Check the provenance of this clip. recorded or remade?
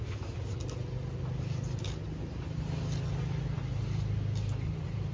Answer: recorded